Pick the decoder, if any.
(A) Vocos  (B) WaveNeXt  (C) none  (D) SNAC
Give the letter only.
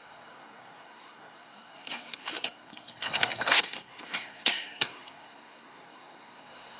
D